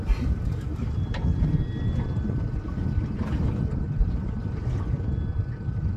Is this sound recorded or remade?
remade